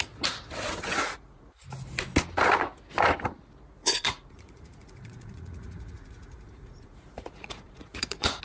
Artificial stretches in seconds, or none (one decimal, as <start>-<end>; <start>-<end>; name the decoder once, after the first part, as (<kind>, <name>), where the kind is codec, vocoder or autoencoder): 0.9-1.6 (vocoder, Vocos); 3.8-8.4